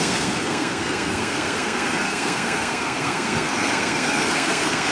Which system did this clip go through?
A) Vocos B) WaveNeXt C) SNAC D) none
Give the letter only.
C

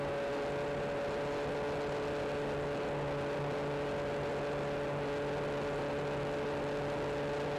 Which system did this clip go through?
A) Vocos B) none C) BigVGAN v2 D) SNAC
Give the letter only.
B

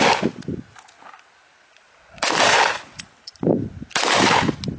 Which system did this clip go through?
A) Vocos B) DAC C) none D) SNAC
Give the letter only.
C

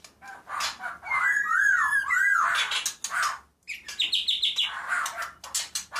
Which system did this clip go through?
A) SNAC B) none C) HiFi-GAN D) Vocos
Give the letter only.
B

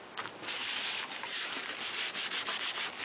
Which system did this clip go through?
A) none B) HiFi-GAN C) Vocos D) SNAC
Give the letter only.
A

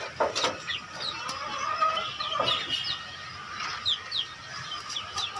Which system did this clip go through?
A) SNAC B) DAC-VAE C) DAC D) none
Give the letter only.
D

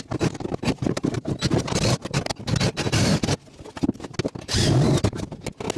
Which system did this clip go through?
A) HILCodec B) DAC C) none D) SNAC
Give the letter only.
C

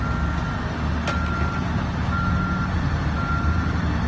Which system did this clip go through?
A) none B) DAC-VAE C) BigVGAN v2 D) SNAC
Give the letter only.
A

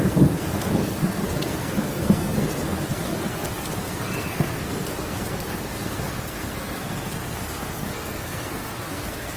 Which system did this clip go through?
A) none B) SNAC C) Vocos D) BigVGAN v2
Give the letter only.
B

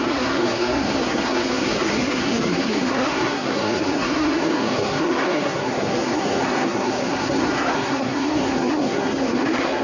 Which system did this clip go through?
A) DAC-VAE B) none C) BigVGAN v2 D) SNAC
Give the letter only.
D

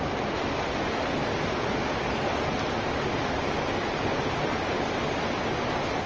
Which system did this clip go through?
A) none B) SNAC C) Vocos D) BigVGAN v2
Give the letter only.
A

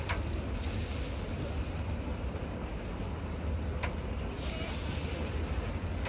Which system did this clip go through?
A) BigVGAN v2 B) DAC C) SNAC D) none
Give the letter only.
D